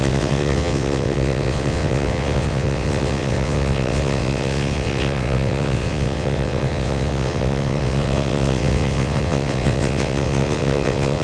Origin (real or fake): fake